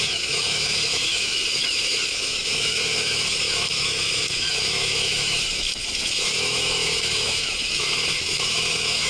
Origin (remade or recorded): remade